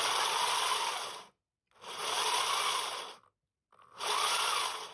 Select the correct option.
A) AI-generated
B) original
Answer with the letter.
B